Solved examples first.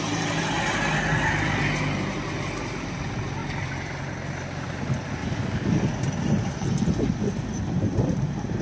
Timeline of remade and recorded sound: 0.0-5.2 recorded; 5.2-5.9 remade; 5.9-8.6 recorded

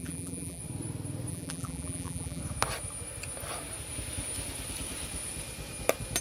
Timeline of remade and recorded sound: 0.0-0.6 remade; 0.6-1.3 recorded; 1.3-2.4 remade; 2.4-6.2 recorded

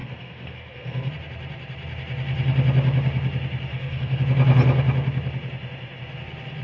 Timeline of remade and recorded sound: 0.0-1.1 remade; 1.1-3.7 recorded; 3.7-4.2 remade; 4.2-6.6 recorded

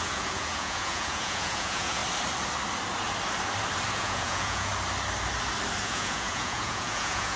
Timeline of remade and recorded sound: 0.0-2.0 remade; 2.0-3.9 recorded; 3.9-4.7 remade; 4.7-5.8 recorded; 5.8-7.4 remade